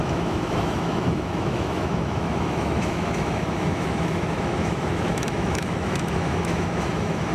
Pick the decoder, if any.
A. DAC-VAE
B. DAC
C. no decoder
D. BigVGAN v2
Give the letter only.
A